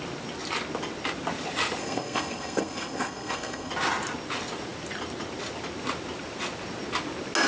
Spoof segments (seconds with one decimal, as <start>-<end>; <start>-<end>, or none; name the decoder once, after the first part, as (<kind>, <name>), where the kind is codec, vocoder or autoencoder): 1.8-3.7 (codec, SNAC)